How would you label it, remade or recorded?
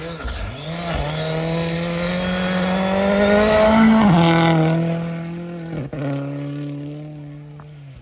recorded